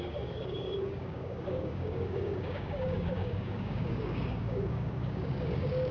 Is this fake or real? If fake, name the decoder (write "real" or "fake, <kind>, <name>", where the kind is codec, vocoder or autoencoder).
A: fake, codec, DAC